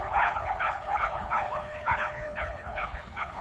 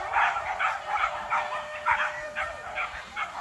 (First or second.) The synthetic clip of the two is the first